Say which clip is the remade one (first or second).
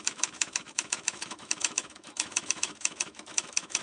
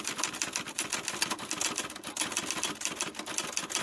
first